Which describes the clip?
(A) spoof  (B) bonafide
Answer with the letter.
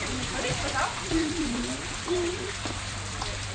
A